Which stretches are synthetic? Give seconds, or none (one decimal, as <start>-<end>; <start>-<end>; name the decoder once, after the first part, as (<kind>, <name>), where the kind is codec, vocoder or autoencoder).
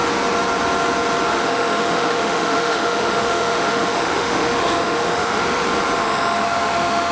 1.3-5.6 (autoencoder, DAC-VAE); 6.0-7.1